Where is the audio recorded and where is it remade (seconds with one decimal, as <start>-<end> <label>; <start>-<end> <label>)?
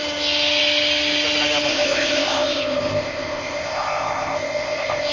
0.0-1.7 recorded; 1.7-5.1 remade